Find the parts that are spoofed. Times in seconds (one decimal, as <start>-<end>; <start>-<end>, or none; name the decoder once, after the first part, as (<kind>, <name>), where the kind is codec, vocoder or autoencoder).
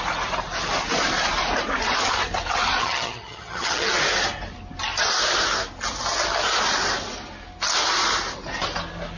2.8-3.9 (vocoder, HiFi-GAN)